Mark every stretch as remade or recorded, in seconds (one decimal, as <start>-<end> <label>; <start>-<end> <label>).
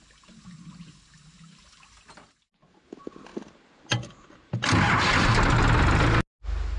0.0-6.8 recorded